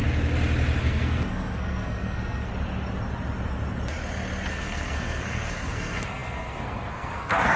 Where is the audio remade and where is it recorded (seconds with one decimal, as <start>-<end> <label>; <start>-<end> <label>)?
0.0-0.8 recorded; 0.8-2.5 remade; 2.5-4.5 recorded; 4.5-7.6 remade